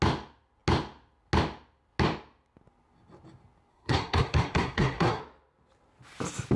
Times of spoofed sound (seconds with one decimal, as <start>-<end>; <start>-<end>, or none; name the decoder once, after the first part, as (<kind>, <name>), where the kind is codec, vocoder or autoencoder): 3.7-5.2 (codec, SNAC)